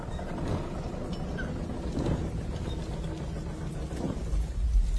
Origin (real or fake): real